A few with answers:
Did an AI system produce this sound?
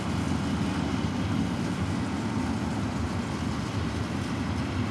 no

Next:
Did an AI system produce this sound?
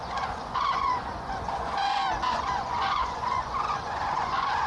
yes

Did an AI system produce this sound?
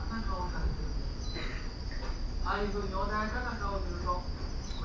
no